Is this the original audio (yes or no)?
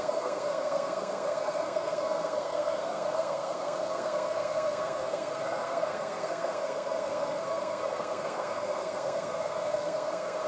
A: no